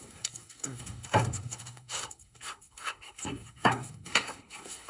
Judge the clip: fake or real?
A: fake